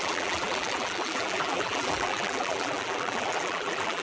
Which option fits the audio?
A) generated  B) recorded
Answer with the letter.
A